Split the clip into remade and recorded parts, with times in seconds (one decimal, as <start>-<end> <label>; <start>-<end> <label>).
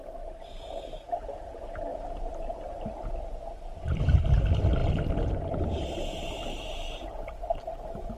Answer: 0.0-1.9 recorded; 1.9-3.1 remade; 3.1-8.2 recorded